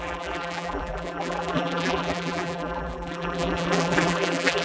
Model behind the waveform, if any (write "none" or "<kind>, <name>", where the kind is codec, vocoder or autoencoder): vocoder, BigVGAN v2